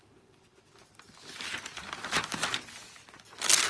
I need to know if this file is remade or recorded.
remade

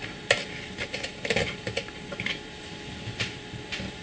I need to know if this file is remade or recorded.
remade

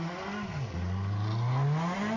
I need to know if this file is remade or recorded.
recorded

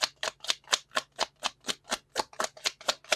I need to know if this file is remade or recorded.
recorded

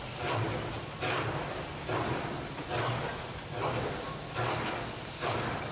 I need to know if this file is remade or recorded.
recorded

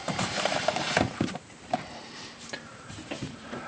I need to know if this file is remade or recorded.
remade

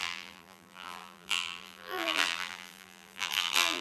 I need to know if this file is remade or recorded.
remade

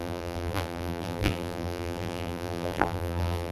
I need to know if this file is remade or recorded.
remade